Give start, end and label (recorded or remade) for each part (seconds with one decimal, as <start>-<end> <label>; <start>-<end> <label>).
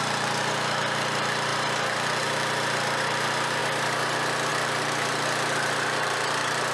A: 0.0-3.6 remade; 3.6-4.5 recorded; 4.5-6.7 remade